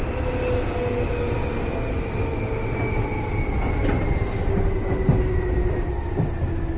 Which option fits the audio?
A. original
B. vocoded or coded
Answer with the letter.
A